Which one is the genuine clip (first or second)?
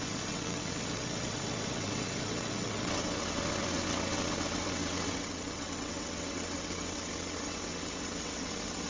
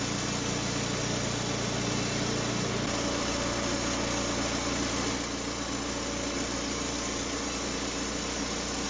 second